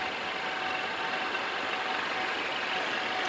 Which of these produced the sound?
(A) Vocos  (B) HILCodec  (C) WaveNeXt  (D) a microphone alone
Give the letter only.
D